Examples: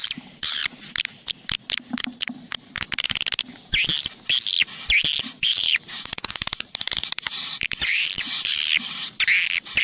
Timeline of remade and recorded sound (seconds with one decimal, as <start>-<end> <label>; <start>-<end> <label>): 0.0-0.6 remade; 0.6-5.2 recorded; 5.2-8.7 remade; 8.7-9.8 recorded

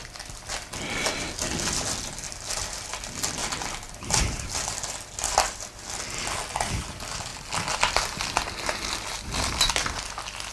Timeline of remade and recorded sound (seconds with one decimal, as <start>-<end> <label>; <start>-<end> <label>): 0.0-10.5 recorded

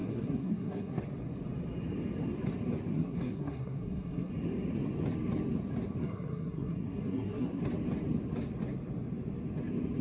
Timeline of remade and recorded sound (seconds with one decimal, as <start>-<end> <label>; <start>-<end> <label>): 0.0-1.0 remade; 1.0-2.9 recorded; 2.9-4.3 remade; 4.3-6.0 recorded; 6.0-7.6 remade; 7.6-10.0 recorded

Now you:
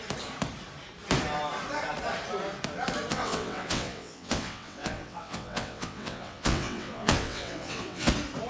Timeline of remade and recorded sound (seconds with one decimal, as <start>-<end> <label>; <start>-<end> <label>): 0.0-3.1 recorded; 3.1-8.1 remade; 8.1-8.5 recorded